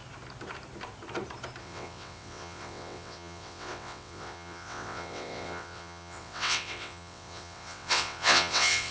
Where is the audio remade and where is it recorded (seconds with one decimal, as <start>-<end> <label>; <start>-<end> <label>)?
0.0-1.6 recorded; 1.6-8.9 remade